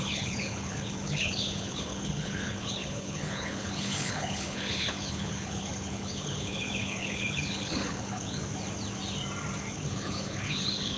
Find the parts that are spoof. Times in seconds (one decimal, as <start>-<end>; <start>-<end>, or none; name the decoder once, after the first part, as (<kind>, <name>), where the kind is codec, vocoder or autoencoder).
0.0-8.4 (codec, HILCodec); 9.7-11.0